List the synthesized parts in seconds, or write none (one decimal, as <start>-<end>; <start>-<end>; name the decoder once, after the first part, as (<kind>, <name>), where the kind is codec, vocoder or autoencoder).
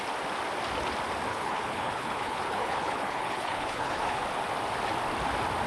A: 1.3-4.2 (codec, HILCodec)